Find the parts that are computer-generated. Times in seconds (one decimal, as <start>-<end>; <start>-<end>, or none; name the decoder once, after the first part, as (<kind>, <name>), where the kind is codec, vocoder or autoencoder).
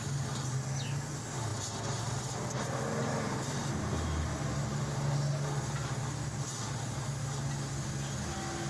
none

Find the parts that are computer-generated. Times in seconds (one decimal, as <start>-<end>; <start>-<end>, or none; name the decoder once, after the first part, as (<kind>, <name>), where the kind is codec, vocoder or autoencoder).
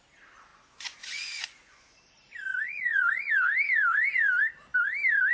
0.5-1.9 (vocoder, Vocos); 2.5-3.3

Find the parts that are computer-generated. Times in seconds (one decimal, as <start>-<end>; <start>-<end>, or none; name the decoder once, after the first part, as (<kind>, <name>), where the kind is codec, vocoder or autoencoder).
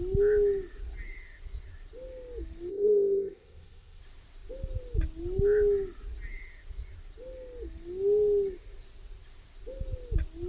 2.7-4.0 (codec, ZipCodec)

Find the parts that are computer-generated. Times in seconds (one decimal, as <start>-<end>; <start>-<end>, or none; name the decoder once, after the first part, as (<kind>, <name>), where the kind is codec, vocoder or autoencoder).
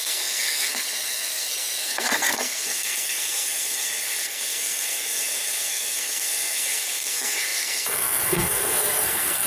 0.0-9.5 (codec, SNAC)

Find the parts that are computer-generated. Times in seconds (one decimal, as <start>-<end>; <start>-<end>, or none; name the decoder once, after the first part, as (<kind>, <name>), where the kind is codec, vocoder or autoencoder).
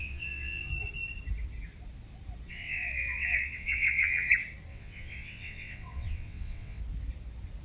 0.0-0.7 (vocoder, WaveNeXt); 2.5-4.3; 4.7-6.8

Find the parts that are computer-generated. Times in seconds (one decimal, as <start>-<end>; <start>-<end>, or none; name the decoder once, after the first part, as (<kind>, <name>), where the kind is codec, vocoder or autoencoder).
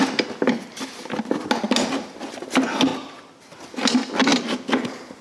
4.3-5.2 (vocoder, BigVGAN v2)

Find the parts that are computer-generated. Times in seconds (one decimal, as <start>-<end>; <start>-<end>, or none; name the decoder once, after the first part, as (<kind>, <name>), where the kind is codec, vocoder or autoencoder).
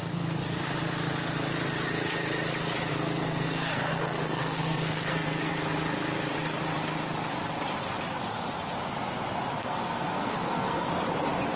2.9-5.5 (codec, SNAC); 9.6-10.9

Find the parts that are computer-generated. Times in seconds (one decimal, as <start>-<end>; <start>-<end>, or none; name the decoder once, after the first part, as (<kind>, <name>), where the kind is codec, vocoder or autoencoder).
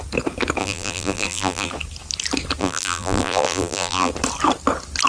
0.6-1.7 (vocoder, BigVGAN v2); 2.6-4.1